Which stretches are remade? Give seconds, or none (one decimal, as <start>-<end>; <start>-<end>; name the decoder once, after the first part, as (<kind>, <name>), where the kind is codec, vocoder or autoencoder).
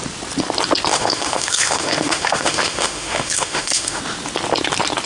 0.9-4.0 (autoencoder, DAC-VAE)